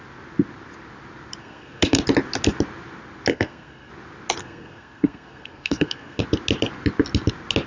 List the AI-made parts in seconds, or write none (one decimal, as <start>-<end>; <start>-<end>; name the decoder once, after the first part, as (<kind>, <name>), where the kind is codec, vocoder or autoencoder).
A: 1.4-2.0 (codec, SNAC); 3.3-3.9; 4.4-6.2